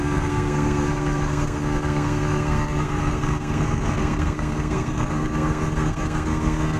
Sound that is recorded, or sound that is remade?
remade